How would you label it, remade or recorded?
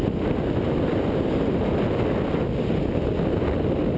recorded